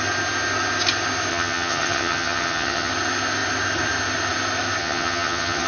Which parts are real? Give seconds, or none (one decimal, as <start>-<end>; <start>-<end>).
0.0-1.3; 2.9-4.8